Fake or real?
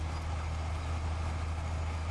real